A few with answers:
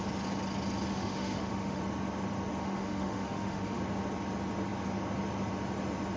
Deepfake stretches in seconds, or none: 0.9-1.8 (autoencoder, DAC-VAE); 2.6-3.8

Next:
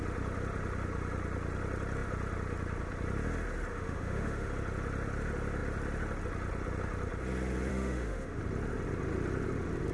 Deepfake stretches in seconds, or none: 3.7-4.5 (autoencoder, DAC-VAE); 7.7-8.4